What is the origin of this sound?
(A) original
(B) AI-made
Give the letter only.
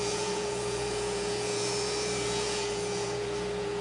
B